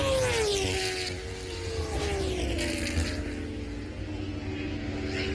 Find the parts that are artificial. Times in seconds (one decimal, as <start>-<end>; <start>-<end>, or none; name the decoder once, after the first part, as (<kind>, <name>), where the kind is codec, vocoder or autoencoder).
none